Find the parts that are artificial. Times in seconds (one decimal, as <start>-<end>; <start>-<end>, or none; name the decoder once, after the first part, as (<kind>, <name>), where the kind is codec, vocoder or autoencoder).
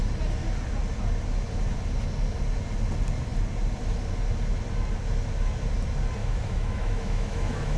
6.2-7.8 (autoencoder, DAC-VAE)